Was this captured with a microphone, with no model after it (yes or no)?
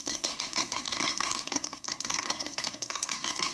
no